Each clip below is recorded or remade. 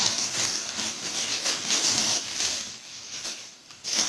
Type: remade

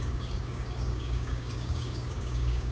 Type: remade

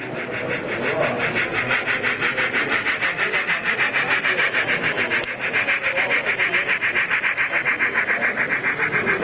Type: recorded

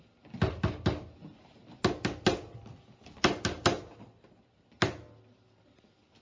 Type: recorded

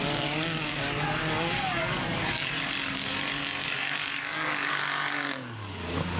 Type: remade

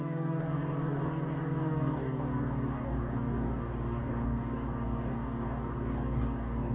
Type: remade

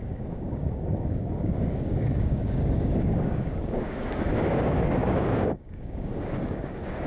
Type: remade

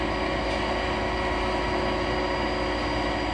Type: recorded